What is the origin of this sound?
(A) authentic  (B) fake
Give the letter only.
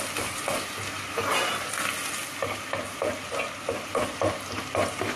A